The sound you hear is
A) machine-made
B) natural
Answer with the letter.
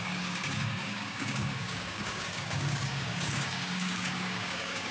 A